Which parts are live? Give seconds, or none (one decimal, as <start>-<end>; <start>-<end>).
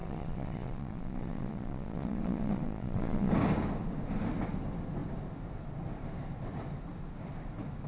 3.3-7.9